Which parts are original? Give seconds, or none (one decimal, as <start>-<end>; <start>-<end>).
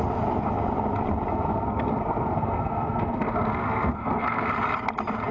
0.0-1.3; 4.5-5.3